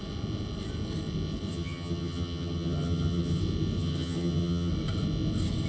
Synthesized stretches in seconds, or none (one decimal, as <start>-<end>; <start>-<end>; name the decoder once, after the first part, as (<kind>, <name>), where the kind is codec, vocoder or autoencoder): 1.5-3.4 (vocoder, HiFi-GAN); 3.8-4.7